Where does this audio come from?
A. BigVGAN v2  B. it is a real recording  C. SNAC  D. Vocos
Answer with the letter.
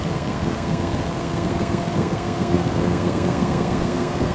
C